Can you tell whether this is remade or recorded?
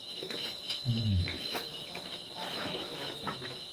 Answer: remade